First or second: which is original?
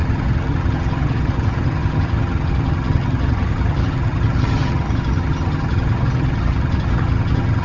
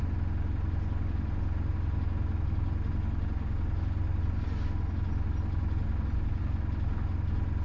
second